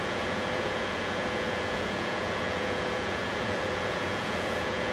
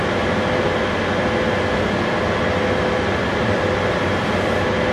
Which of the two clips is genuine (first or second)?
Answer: second